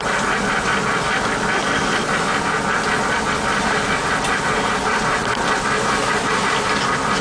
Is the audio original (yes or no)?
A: yes